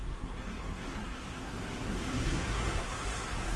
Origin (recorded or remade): remade